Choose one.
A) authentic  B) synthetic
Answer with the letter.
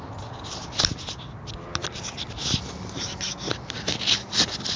A